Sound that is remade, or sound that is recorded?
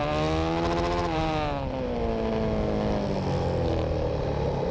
recorded